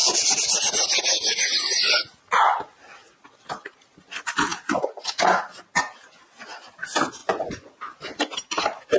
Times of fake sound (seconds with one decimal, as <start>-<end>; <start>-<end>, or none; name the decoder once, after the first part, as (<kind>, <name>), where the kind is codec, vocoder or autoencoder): 7.2-7.7 (vocoder, Vocos)